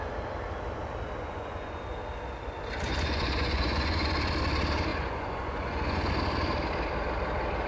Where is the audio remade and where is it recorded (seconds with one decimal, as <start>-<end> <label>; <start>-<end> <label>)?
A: 0.0-1.2 recorded; 1.2-1.8 remade; 1.8-2.9 recorded; 2.9-4.1 remade; 4.1-4.9 recorded; 4.9-6.1 remade; 6.1-7.7 recorded